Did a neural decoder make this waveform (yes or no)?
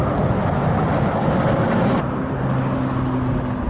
no